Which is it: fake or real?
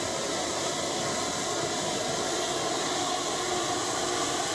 real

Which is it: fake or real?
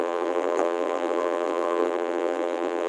fake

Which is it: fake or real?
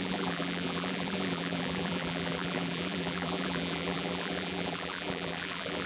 fake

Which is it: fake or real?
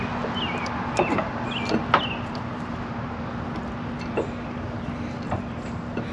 real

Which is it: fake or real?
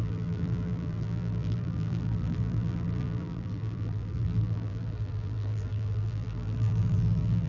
fake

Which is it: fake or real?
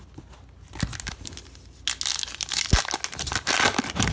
real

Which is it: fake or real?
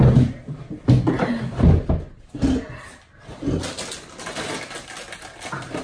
real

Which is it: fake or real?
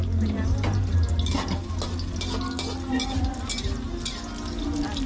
real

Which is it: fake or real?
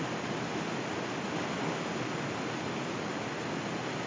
real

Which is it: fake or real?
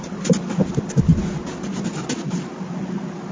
real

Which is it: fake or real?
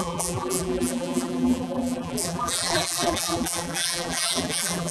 fake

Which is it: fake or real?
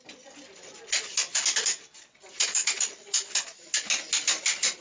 real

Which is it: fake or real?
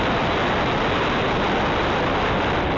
real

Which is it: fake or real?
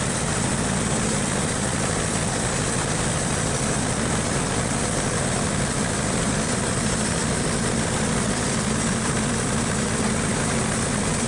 fake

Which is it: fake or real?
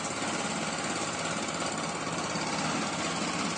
real